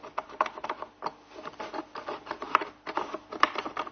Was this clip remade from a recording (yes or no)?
no